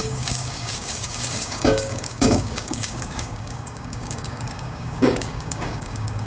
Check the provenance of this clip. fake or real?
fake